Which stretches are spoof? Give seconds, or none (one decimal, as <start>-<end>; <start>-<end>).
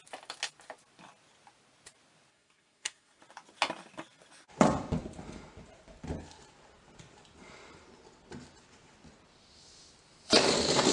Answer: 2.3-3.2